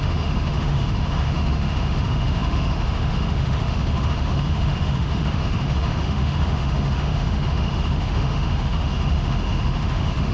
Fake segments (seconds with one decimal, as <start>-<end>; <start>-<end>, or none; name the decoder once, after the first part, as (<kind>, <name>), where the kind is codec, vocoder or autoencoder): 0.0-10.3 (autoencoder, DAC-VAE)

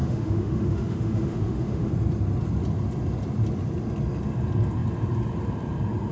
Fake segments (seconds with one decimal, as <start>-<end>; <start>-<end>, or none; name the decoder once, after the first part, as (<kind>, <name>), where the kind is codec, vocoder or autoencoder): 0.0-1.9 (autoencoder, DAC-VAE)

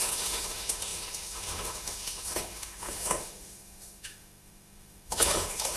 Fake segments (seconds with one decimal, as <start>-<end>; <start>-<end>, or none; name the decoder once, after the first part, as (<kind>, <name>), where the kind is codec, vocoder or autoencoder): 0.0-5.8 (autoencoder, DAC-VAE)